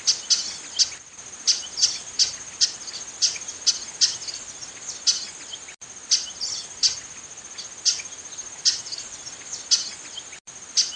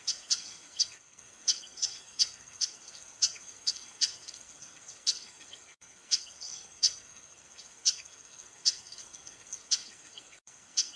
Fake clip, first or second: second